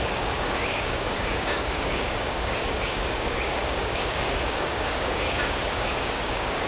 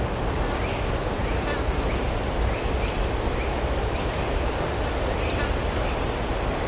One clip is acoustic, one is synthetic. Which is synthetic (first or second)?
first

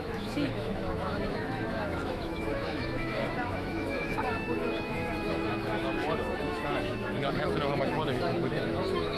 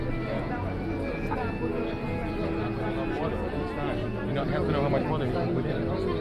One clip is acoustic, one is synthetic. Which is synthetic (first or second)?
first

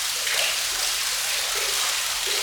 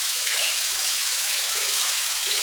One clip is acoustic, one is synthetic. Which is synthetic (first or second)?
second